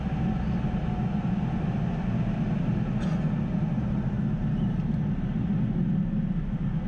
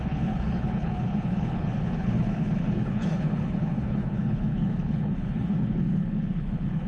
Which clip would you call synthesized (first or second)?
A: second